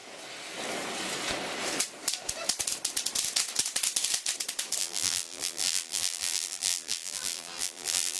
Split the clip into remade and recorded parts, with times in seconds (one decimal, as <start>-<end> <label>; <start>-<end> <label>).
0.0-4.8 recorded; 4.8-8.2 remade